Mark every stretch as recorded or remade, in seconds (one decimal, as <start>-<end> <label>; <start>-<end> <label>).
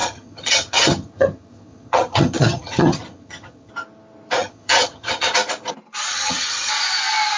0.0-3.7 remade; 3.7-4.4 recorded; 4.4-5.3 remade; 5.3-6.1 recorded; 6.1-6.7 remade; 6.7-7.4 recorded